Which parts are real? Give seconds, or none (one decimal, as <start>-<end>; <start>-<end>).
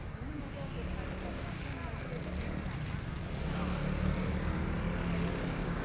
0.7-1.3; 1.8-5.3